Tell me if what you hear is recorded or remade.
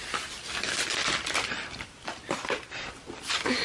remade